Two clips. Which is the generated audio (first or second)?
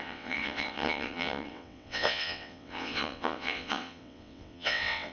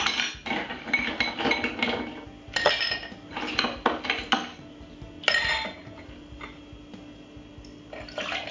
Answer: first